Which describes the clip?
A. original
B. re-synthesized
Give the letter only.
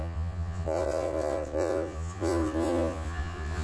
B